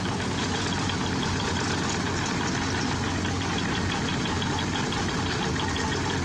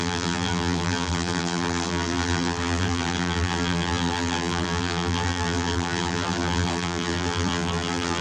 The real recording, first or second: first